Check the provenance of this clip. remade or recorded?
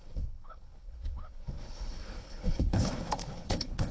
remade